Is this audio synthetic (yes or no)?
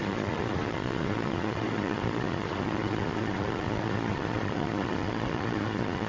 yes